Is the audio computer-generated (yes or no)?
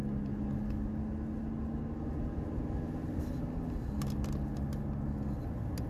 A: no